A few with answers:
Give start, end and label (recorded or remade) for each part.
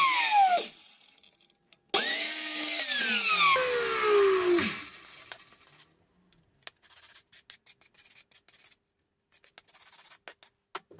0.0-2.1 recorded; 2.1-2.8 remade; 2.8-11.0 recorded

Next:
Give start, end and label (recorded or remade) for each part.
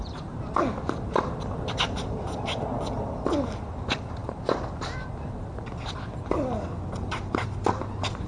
0.0-8.3 recorded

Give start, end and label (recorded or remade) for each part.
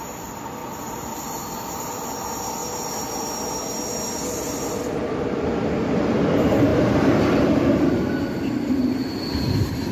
0.0-9.9 recorded